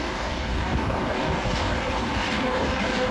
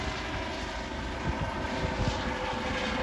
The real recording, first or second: second